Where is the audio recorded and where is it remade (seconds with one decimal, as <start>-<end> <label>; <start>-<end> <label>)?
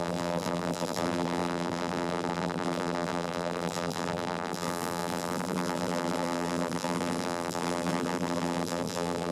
0.0-9.3 remade